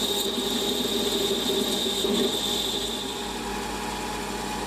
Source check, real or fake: real